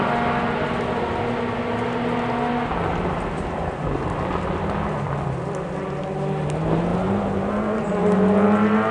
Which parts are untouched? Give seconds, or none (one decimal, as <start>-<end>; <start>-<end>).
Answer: 0.0-6.9; 7.5-8.9